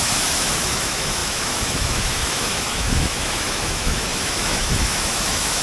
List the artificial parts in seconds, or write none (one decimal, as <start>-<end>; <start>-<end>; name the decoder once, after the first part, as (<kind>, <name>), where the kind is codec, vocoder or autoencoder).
0.0-5.6 (autoencoder, DAC-VAE)